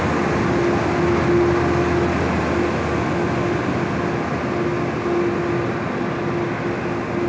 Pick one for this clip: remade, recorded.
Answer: recorded